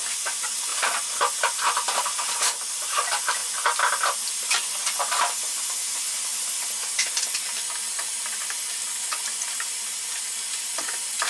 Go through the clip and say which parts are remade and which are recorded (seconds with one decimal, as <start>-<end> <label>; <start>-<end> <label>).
0.0-3.4 remade; 3.4-5.0 recorded; 5.0-11.3 remade